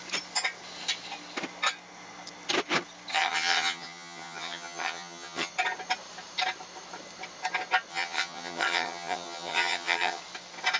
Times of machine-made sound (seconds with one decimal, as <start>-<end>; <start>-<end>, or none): 3.1-5.5; 7.9-10.2

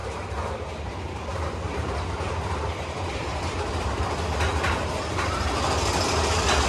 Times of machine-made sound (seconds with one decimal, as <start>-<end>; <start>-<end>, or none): 0.0-4.0

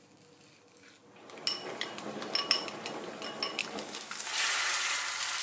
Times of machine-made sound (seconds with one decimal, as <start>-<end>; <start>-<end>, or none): 3.6-4.2

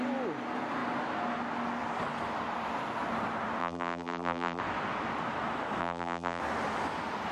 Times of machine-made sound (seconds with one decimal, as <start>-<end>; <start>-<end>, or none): 3.6-4.6; 5.8-6.4